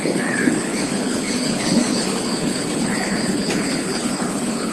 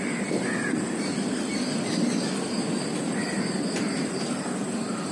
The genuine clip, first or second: second